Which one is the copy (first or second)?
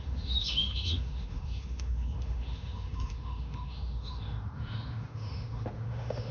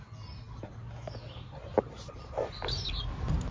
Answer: first